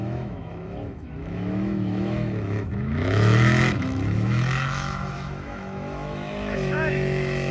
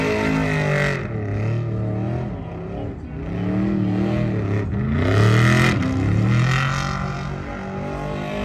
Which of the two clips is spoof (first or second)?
first